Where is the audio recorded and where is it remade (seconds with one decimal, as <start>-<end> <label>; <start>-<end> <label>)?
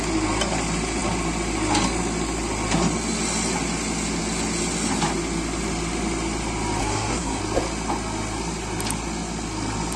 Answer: 0.0-6.8 recorded; 6.8-7.4 remade; 7.4-10.0 recorded